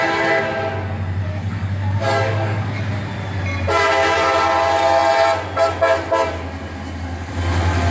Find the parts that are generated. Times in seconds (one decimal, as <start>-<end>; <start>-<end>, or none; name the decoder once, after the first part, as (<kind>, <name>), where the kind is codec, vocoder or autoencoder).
1.2-2.8 (codec, DAC)